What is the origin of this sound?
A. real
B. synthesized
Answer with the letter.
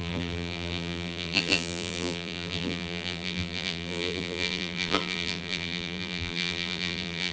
B